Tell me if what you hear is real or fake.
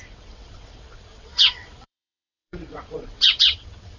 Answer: fake